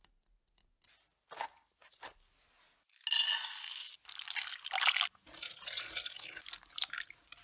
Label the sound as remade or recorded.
recorded